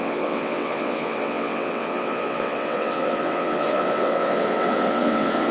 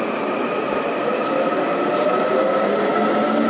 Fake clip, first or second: first